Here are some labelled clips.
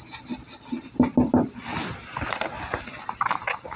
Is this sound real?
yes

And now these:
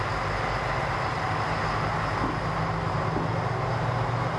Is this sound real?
yes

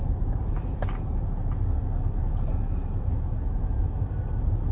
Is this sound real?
yes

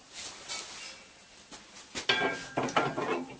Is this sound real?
yes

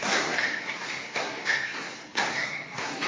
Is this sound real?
no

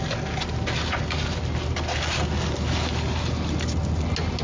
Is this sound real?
yes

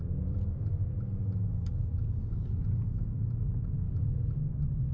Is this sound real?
yes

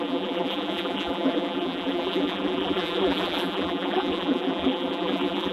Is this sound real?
no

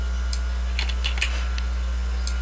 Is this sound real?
yes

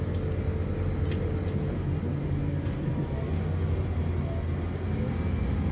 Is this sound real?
yes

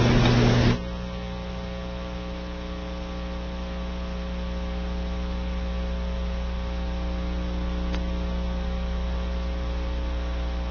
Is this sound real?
yes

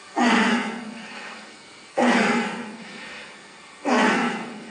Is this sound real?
no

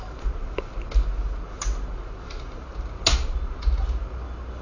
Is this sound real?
yes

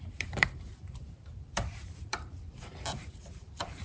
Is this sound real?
no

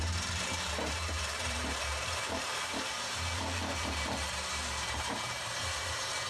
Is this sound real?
no